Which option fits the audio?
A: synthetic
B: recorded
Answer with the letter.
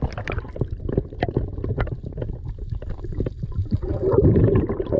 B